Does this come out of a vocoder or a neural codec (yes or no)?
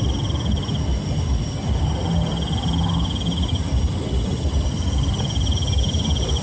no